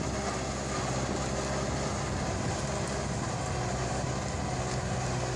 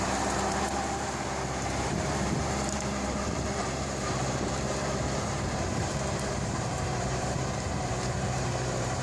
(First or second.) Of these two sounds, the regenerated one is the second